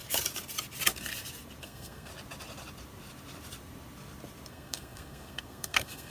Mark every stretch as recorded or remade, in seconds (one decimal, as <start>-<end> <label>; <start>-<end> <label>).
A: 0.0-1.6 recorded; 1.6-2.1 remade; 2.1-4.5 recorded; 4.5-6.1 remade